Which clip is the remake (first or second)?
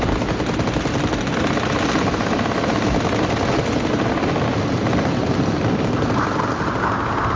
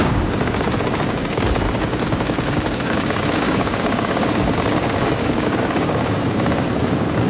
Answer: second